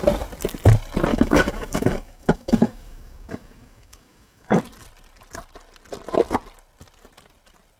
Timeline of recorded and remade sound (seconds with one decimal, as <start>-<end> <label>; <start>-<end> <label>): 0.0-1.1 recorded; 1.1-4.6 remade; 4.6-7.8 recorded